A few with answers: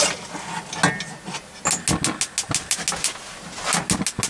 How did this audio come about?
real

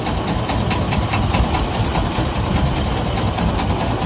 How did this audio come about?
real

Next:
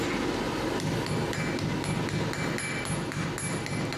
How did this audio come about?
real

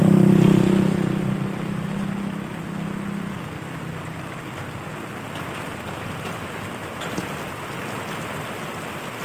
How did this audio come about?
real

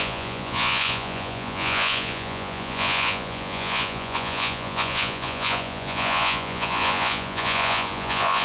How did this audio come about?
fake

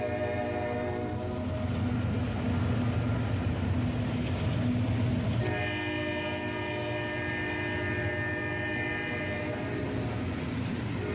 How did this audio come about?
real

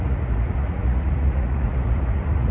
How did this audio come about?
fake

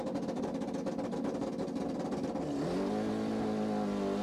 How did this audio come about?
real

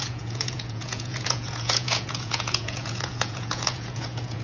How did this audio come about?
fake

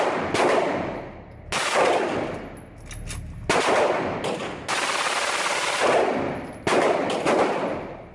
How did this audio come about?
real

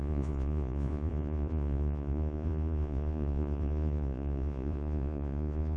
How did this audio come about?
fake